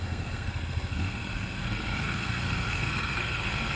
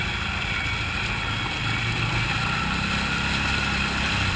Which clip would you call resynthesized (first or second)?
first